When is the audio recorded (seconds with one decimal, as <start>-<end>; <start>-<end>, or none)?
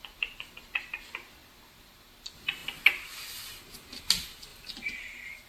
0.0-5.5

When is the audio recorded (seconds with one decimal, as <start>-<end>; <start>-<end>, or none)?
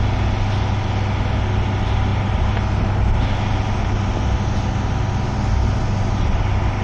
0.0-6.8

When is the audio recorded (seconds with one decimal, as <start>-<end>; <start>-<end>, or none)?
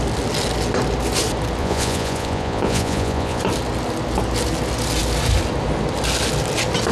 0.0-1.6; 3.4-6.9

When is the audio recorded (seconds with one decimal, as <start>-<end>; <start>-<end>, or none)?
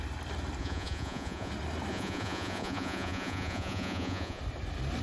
0.0-0.6; 1.5-1.9; 4.4-5.0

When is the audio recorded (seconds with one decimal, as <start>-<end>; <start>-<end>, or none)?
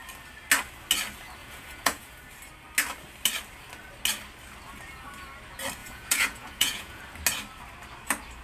0.0-1.4; 2.2-5.8; 7.0-8.4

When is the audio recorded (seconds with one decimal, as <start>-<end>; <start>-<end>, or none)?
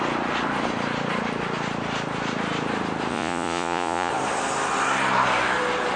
0.0-3.1; 4.1-6.0